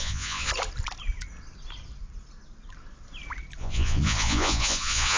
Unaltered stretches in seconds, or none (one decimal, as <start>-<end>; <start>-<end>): 0.5-3.6